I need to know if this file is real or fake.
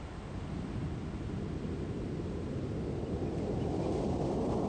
real